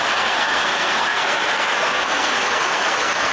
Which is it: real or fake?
fake